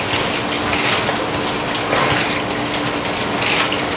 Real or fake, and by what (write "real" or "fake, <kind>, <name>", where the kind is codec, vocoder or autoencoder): real